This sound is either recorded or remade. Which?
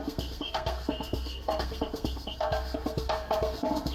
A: remade